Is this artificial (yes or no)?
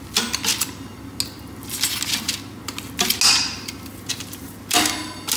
no